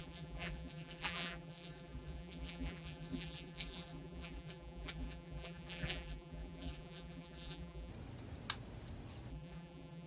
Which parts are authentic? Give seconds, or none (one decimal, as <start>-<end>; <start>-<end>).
7.9-9.3

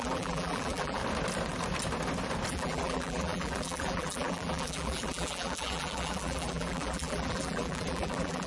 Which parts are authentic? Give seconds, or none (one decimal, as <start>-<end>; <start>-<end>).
1.0-2.5

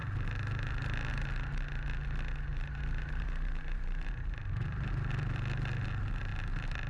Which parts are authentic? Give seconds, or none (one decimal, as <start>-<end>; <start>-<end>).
0.0-2.5; 4.9-6.9

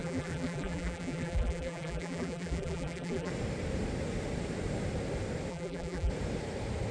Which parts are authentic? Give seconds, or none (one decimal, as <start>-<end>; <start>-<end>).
3.3-5.5; 6.1-6.9

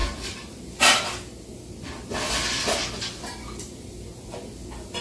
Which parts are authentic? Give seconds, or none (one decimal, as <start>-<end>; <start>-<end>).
0.0-5.0

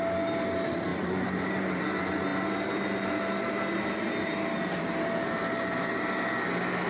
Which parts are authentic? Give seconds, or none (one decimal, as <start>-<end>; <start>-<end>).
0.0-0.9; 1.8-6.9

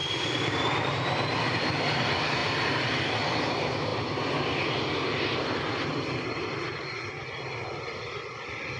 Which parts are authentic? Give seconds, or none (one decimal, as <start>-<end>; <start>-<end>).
0.7-8.8

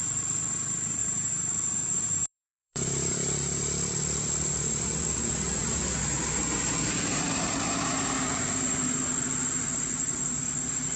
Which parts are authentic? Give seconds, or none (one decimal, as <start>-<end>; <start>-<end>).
0.0-1.0; 3.1-11.0